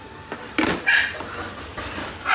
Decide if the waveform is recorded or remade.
recorded